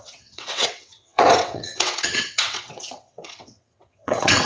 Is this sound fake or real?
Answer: fake